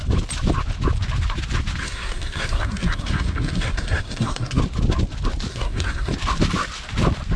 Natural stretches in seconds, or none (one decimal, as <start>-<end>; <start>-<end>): 0.0-1.8; 4.6-5.5; 6.1-7.4